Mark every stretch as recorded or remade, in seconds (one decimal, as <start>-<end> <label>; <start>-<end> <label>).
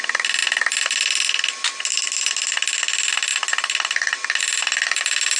0.0-5.4 recorded